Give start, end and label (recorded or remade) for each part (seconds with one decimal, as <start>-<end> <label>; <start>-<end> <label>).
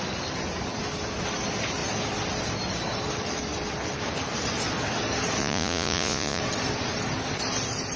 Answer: 0.0-5.4 recorded; 5.4-6.4 remade; 6.4-8.0 recorded